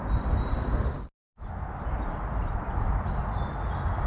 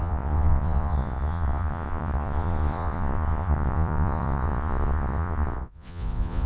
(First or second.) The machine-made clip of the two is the second